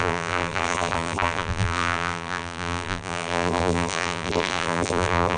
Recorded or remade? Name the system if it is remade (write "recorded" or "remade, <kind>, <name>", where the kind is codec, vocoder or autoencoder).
remade, vocoder, BigVGAN v2